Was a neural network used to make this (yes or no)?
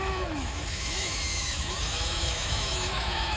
yes